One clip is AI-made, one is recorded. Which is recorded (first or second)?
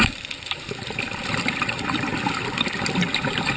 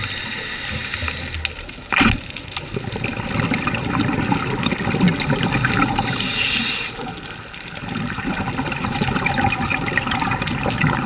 second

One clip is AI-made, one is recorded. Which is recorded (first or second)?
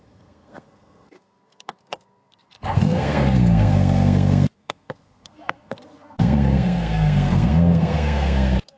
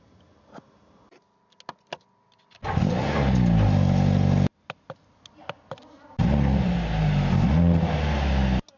second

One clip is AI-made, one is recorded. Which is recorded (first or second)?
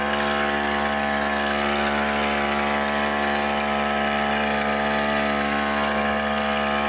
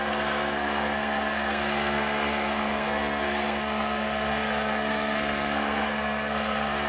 first